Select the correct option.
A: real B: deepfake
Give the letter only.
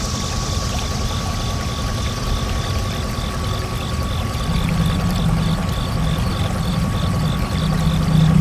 A